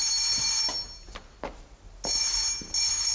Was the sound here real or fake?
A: real